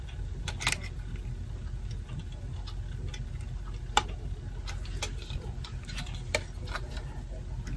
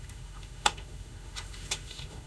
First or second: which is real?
first